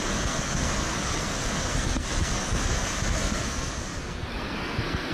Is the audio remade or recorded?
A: remade